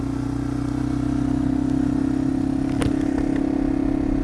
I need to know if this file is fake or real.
real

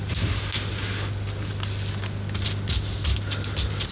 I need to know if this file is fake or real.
real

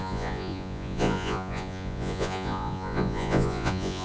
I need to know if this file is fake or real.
fake